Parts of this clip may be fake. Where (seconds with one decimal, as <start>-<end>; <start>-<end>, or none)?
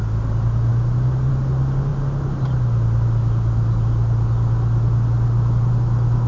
none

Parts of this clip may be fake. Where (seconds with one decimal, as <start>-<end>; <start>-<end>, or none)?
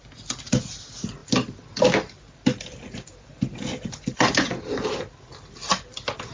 none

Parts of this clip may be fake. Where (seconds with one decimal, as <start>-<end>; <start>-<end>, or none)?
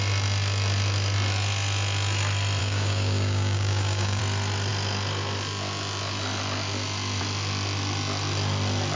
2.6-4.2